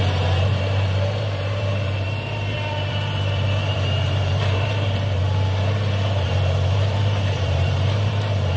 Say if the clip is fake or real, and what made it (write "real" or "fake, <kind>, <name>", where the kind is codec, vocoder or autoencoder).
fake, vocoder, BigVGAN v2